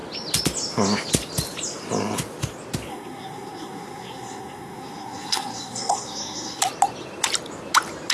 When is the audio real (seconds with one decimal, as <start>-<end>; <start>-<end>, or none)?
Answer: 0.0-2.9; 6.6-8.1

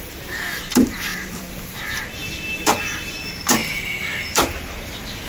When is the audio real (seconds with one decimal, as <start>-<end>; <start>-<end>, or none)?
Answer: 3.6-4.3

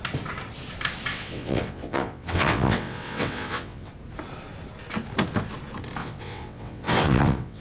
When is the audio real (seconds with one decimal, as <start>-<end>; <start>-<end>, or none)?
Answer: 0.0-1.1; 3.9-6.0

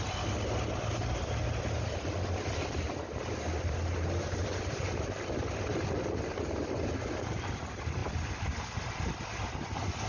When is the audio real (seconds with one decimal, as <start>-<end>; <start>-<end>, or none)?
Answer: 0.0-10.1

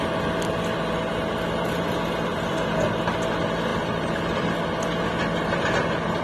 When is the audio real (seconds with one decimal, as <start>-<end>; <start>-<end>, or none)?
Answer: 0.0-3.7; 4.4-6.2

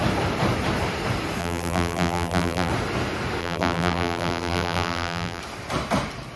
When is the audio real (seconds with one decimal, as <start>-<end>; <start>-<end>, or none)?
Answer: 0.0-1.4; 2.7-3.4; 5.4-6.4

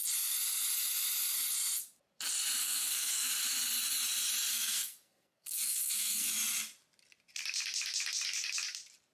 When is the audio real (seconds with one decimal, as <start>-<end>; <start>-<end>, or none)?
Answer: 0.0-2.6; 3.3-4.5; 6.3-9.1

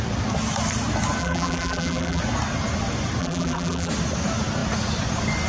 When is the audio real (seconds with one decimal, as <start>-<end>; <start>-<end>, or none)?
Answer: 0.0-1.2; 2.2-3.2; 3.9-5.5